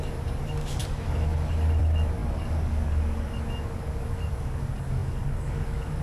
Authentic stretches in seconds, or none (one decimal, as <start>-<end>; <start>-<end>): none